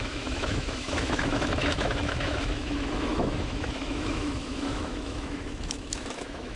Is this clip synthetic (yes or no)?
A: yes